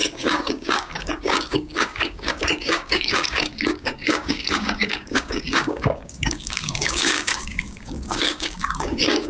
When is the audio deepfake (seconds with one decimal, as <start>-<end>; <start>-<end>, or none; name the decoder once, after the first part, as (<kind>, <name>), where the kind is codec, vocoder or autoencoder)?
0.0-9.3 (codec, DAC)